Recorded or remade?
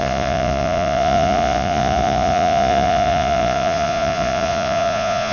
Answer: remade